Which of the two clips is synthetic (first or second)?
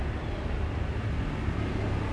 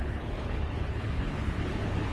second